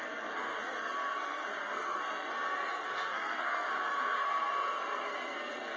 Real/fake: fake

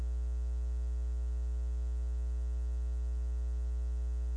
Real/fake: real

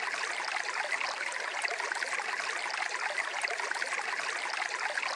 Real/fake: real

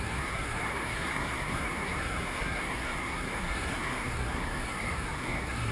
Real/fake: fake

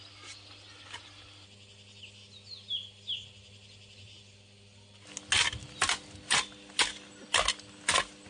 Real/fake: real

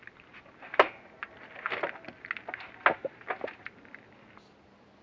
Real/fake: real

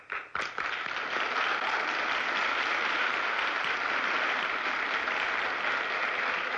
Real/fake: real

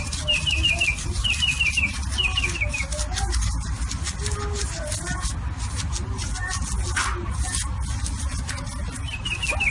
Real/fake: real